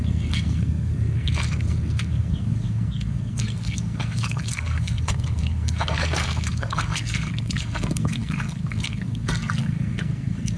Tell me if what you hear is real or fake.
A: fake